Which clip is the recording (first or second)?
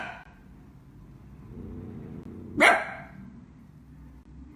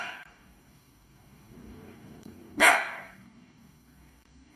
first